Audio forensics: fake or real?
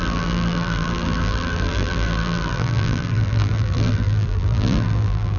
fake